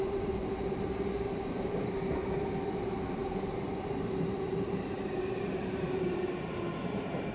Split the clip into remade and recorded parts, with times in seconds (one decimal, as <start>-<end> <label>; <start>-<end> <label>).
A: 0.0-7.3 remade